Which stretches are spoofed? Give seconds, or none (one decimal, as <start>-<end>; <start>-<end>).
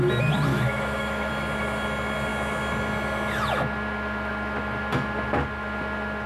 0.5-1.3